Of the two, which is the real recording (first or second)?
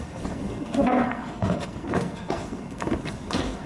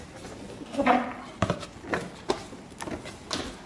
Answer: second